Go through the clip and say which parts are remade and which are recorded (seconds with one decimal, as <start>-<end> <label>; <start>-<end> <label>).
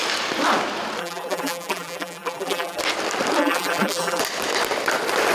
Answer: 0.0-1.0 recorded; 1.0-2.8 remade; 2.8-3.4 recorded; 3.4-4.2 remade; 4.2-5.3 recorded